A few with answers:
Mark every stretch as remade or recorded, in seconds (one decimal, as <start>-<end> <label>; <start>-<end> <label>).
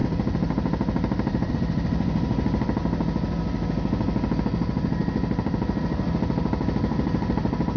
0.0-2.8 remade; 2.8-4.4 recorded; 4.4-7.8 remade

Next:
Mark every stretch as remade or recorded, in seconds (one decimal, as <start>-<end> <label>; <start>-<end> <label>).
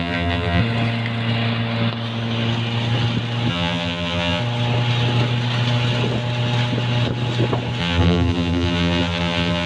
0.0-0.6 remade; 0.6-3.5 recorded; 3.5-4.4 remade; 4.4-7.8 recorded; 7.8-9.7 remade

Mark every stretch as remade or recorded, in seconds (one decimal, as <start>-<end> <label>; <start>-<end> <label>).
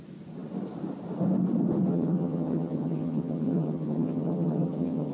0.0-1.9 recorded; 1.9-5.1 remade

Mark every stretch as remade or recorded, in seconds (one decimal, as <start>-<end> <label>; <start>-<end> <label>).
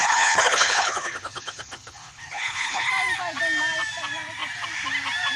0.0-2.9 remade; 2.9-5.4 recorded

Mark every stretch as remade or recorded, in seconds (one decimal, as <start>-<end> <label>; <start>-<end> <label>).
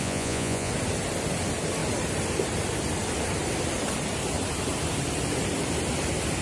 0.0-0.7 remade; 0.7-6.4 recorded